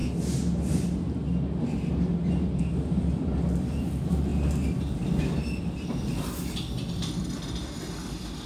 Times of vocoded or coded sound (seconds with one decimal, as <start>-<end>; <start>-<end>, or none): 2.6-4.3; 5.2-8.5